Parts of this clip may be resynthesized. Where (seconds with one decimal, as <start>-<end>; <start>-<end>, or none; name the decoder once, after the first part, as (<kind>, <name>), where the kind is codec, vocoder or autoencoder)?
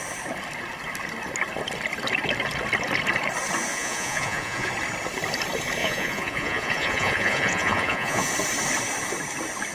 3.7-4.7 (vocoder, Vocos); 5.8-8.3